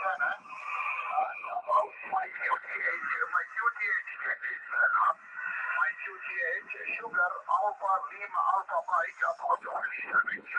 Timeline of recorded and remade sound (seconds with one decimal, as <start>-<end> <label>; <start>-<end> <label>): 0.0-1.2 recorded; 1.2-2.9 remade; 2.9-4.1 recorded; 4.1-5.1 remade; 5.1-9.4 recorded; 9.4-10.6 remade